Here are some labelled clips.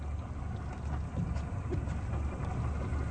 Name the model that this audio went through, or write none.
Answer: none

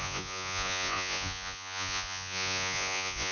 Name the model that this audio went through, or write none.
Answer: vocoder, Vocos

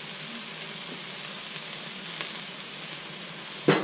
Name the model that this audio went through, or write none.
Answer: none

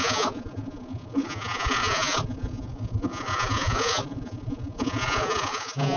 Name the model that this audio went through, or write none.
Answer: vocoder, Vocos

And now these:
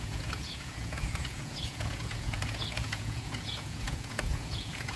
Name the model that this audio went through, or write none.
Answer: vocoder, Vocos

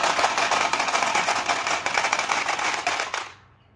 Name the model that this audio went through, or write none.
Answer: vocoder, Vocos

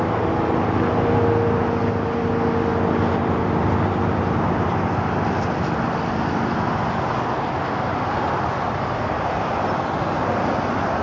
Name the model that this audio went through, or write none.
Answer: none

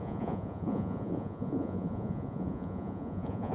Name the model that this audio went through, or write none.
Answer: vocoder, Vocos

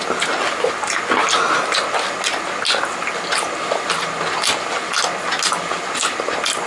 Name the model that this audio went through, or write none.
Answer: none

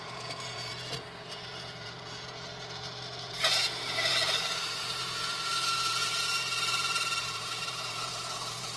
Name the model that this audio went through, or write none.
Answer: vocoder, Vocos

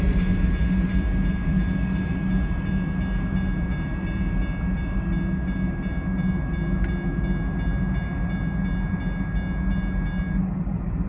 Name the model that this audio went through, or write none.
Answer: none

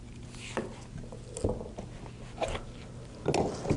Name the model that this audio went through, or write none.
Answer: none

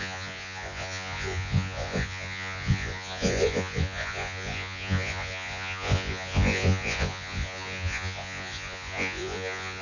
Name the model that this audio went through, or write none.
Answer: vocoder, Vocos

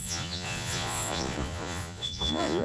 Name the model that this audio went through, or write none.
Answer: vocoder, Vocos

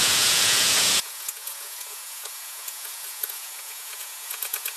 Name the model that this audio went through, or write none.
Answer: vocoder, Vocos